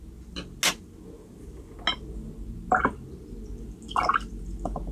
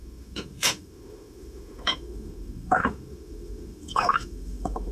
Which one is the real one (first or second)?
first